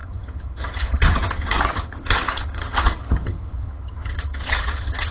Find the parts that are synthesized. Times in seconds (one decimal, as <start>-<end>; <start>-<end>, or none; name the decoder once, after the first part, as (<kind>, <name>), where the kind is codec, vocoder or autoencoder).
0.0-5.1 (vocoder, HiFi-GAN)